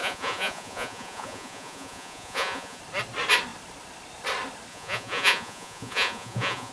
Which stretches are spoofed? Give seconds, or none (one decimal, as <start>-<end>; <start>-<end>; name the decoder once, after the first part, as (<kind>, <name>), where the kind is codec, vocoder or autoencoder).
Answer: 0.0-2.8 (vocoder, Vocos); 4.7-6.7